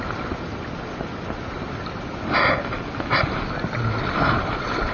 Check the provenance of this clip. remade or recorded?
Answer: recorded